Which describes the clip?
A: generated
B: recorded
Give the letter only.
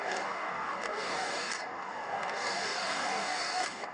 A